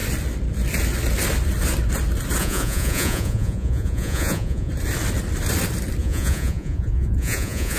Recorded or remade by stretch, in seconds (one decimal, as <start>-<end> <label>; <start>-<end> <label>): 0.0-2.4 recorded; 2.4-4.7 remade; 4.7-6.0 recorded; 6.0-7.8 remade